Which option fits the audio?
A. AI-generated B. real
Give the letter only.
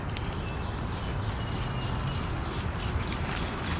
B